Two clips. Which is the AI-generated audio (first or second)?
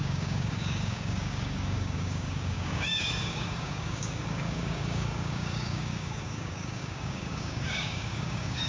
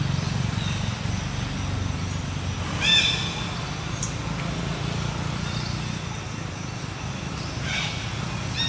first